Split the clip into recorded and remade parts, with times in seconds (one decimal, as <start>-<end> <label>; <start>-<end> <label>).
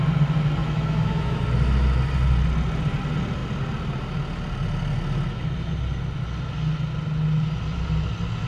0.0-0.6 recorded; 0.6-1.4 remade; 1.4-8.5 recorded